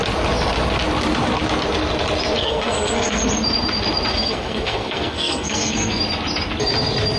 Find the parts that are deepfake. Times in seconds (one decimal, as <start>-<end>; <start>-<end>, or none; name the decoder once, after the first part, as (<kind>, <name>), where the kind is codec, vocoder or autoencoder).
2.4-3.2 (codec, SNAC); 4.1-6.0